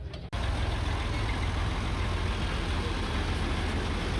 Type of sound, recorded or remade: recorded